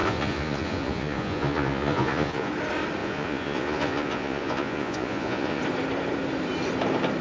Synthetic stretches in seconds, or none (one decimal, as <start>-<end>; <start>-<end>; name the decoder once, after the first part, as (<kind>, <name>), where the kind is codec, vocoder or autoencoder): 0.0-2.5 (vocoder, Vocos); 3.0-5.6